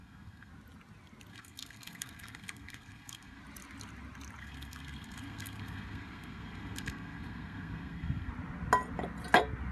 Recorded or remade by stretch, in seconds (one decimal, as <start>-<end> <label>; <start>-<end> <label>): 0.0-0.5 remade; 0.5-1.3 recorded; 1.3-3.4 remade; 3.4-4.4 recorded; 4.4-8.3 remade; 8.3-9.7 recorded